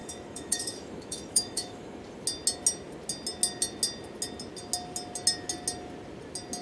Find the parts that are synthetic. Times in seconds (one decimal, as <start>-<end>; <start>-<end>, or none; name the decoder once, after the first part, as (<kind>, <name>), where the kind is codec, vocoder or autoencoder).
0.0-2.0 (autoencoder, DAC-VAE)